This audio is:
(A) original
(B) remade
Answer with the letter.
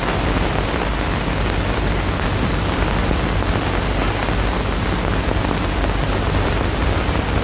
A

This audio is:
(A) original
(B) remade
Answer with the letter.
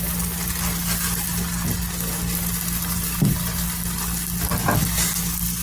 A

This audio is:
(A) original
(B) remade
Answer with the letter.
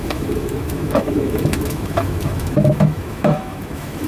B